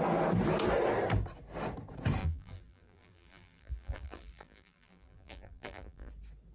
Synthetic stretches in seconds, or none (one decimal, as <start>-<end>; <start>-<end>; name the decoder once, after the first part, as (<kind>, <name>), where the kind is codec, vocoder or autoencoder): 2.2-6.1 (vocoder, BigVGAN v2)